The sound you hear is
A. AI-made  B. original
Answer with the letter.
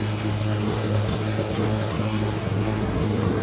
A